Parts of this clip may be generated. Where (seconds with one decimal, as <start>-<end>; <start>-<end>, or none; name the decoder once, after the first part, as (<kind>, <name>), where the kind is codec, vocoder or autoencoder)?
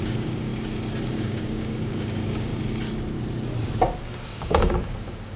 0.0-0.5 (codec, DAC); 1.1-2.5; 4.0-5.4